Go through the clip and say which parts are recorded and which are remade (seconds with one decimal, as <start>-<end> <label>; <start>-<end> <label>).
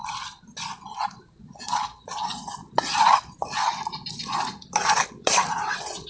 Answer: 0.0-1.3 recorded; 1.3-2.6 remade; 2.6-5.1 recorded; 5.1-6.1 remade